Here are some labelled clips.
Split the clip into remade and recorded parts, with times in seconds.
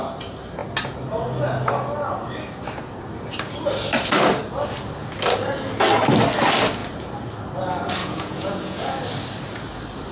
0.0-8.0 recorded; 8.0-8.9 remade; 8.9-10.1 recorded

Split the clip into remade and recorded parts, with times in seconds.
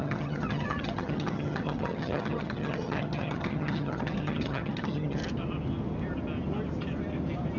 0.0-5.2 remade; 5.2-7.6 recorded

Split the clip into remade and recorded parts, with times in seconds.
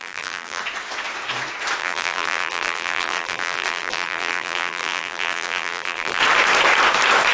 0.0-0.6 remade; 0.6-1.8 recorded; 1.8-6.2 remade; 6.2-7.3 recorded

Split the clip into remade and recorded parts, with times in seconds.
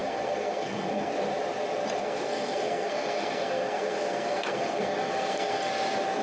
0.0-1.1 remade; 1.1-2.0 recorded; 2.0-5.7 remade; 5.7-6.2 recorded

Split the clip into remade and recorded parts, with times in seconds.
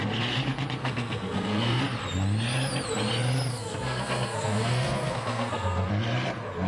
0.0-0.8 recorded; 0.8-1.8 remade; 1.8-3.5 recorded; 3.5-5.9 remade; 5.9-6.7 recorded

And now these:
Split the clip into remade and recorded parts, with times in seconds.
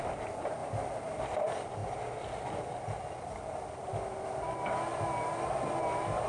0.0-6.3 recorded